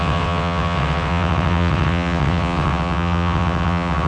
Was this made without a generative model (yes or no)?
no